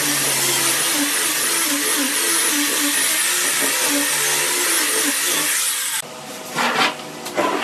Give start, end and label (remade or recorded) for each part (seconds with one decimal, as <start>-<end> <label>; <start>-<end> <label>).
0.0-7.6 recorded